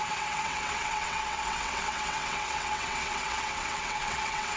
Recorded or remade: remade